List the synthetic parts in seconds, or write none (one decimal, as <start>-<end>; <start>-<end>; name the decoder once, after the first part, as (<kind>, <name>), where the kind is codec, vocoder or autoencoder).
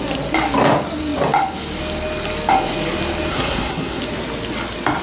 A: 3.3-4.0 (codec, SNAC)